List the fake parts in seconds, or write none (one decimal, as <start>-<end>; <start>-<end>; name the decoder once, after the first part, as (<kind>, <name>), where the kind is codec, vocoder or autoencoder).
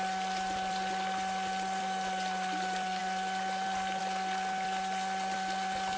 none